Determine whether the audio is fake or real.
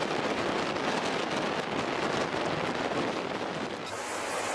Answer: real